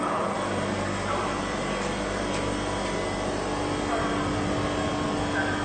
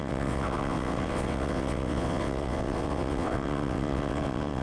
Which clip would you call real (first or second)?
first